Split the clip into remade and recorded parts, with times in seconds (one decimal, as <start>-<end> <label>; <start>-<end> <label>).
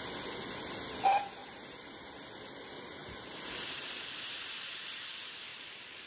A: 0.0-1.4 recorded; 1.4-2.0 remade; 2.0-3.0 recorded; 3.0-4.2 remade; 4.2-5.5 recorded; 5.5-6.1 remade